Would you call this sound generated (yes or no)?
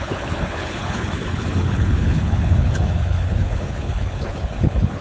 yes